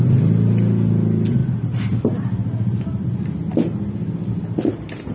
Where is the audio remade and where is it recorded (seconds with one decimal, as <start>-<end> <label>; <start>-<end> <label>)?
0.0-5.1 recorded